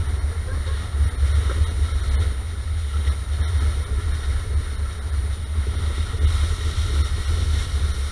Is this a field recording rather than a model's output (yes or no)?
yes